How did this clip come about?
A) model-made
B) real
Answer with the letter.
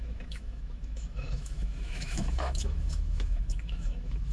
A